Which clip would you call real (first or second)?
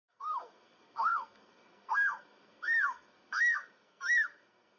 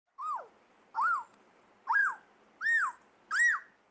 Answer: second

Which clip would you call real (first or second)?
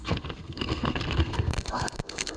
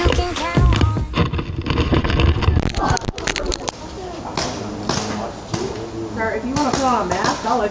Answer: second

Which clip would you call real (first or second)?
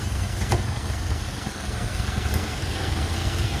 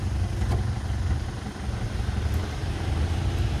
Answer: second